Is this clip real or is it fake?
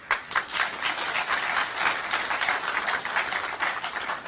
real